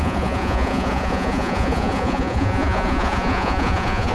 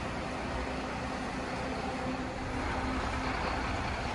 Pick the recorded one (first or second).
second